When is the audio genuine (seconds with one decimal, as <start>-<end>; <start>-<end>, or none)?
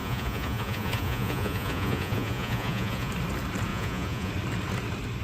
3.1-3.7; 4.3-5.2